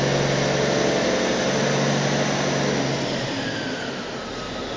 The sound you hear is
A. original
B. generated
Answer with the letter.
A